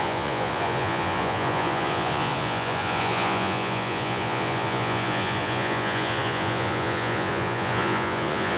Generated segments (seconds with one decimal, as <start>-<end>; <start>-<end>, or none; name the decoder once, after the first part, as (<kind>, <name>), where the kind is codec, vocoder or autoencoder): 0.0-8.6 (vocoder, Vocos)